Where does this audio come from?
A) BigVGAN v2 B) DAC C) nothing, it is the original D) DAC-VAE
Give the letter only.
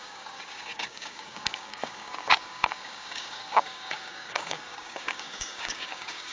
B